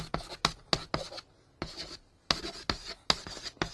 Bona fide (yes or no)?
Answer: yes